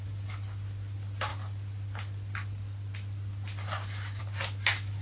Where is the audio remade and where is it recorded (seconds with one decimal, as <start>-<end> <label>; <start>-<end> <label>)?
0.0-5.0 recorded